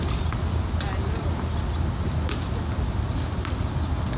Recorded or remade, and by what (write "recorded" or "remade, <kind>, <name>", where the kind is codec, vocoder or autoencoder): recorded